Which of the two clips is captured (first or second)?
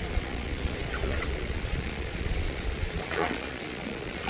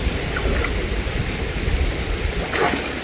second